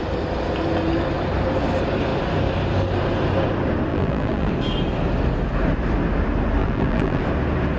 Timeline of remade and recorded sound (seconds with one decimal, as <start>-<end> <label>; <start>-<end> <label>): 0.0-3.9 recorded; 3.9-4.5 remade; 4.5-6.6 recorded; 6.6-7.2 remade; 7.2-7.8 recorded